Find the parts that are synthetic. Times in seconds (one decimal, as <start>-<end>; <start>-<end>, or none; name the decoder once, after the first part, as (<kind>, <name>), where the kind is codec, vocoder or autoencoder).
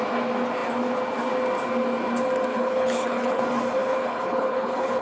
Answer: 2.5-3.4 (codec, HILCodec); 3.8-5.0